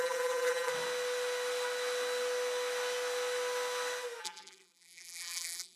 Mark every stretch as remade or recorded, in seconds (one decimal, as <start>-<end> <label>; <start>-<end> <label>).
0.0-0.7 remade; 0.7-4.2 recorded; 4.2-5.8 remade